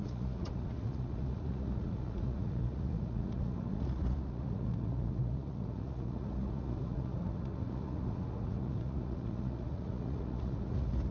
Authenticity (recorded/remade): remade